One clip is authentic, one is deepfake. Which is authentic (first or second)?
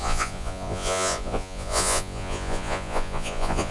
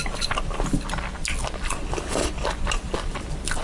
second